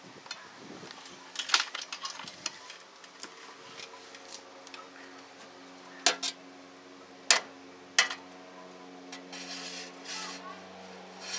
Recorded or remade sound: recorded